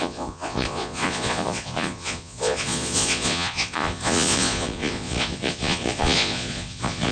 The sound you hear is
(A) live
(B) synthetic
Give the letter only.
B